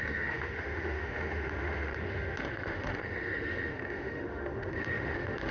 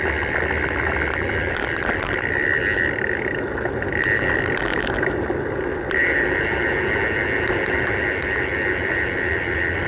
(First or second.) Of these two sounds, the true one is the second